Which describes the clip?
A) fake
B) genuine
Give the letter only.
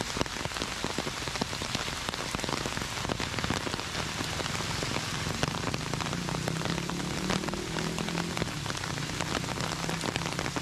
B